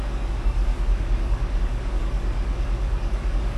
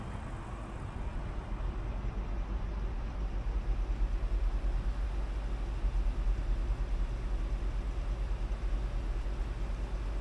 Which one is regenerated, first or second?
first